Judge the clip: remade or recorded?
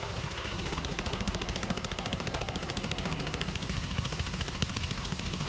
remade